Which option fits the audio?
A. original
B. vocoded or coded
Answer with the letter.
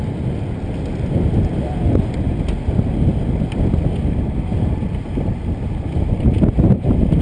A